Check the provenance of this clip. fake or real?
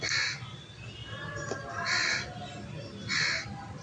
real